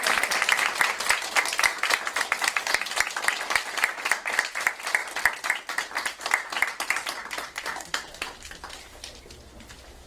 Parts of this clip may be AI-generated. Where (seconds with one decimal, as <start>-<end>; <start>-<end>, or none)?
none